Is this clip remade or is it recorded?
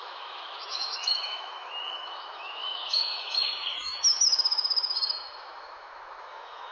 remade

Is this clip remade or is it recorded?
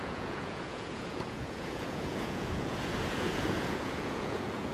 remade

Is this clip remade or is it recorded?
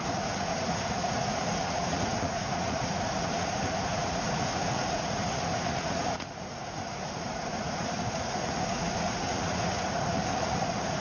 remade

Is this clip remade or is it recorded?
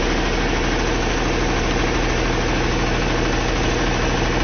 recorded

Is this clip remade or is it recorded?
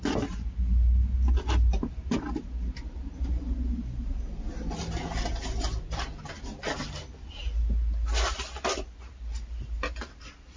recorded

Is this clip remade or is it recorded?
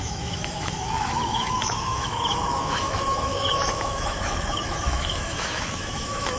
remade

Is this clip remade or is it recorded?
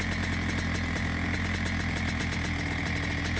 recorded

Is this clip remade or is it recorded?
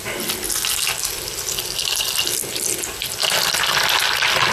recorded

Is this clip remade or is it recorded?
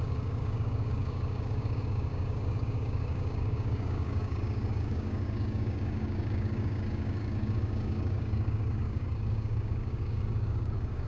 remade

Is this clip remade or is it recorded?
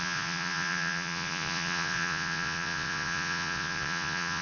remade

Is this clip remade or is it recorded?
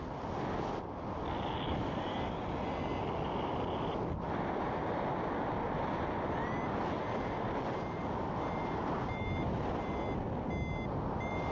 recorded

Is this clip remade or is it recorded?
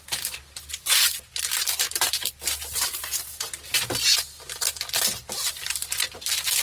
recorded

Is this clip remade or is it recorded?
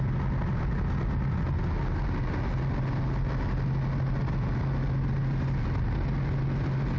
recorded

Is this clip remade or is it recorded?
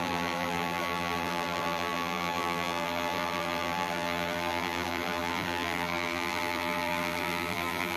remade